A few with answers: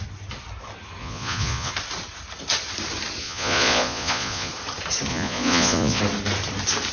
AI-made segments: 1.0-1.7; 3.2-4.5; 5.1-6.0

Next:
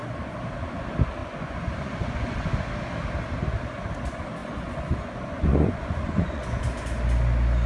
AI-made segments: 1.2-2.5; 4.4-6.6